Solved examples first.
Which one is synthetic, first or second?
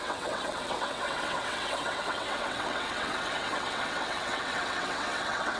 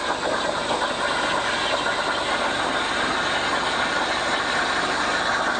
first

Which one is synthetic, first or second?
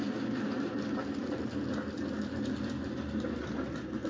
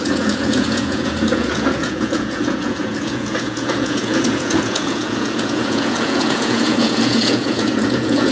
second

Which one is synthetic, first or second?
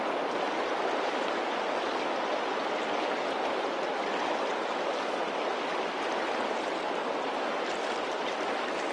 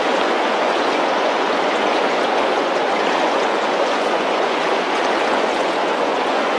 second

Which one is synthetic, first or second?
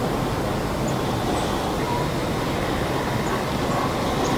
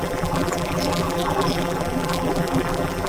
second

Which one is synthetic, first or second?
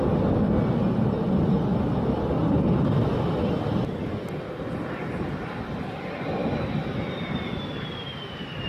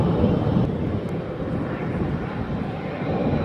second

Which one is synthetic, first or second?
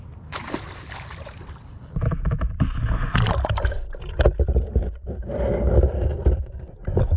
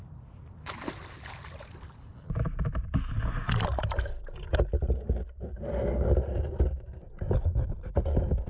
first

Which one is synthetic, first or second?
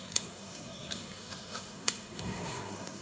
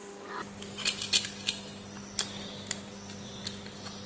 first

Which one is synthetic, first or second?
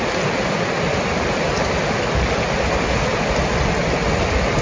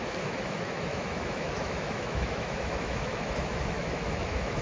second